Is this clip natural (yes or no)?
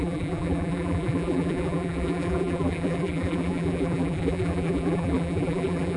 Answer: no